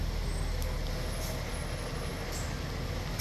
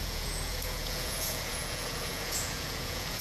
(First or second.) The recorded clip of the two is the first